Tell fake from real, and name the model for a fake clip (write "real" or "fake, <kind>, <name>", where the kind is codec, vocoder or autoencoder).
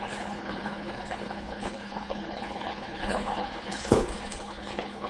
fake, codec, HILCodec